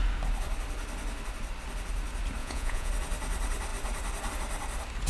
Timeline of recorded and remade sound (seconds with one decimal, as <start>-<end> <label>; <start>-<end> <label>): 0.0-2.4 recorded; 2.4-2.9 remade; 2.9-5.1 recorded